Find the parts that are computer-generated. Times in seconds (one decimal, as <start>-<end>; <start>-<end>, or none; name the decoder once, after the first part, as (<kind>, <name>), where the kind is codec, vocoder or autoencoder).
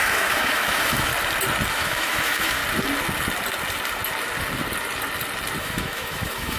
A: 0.0-1.1 (autoencoder, DAC-VAE); 1.7-2.6; 5.6-6.6